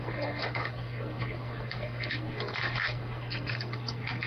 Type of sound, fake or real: fake